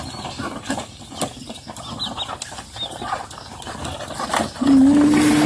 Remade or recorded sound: recorded